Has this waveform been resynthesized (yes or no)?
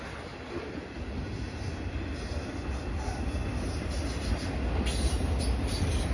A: no